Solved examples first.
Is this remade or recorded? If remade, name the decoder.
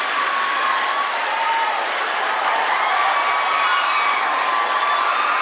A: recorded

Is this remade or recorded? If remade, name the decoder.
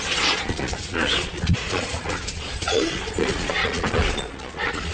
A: remade, vocoder, Vocos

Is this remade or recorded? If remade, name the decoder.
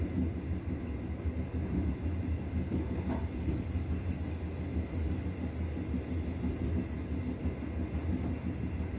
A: recorded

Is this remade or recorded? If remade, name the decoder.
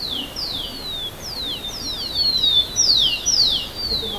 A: recorded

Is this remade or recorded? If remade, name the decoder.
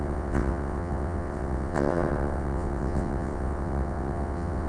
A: remade, vocoder, WaveNeXt